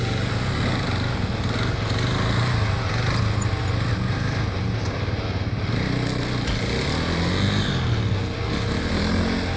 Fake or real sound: real